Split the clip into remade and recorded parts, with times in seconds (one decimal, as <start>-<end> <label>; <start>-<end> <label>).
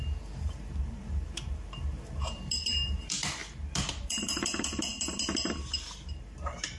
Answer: 0.0-3.4 remade; 3.4-4.0 recorded; 4.0-6.8 remade